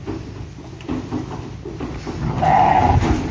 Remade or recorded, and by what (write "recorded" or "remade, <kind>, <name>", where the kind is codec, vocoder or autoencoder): recorded